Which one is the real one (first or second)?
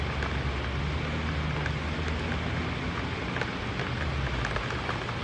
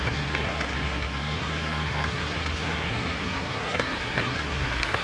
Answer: first